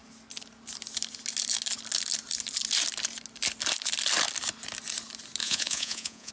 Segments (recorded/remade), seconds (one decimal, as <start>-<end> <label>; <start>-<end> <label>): 0.0-5.4 recorded; 5.4-6.3 remade